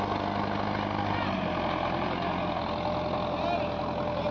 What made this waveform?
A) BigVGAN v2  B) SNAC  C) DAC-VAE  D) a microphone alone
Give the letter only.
D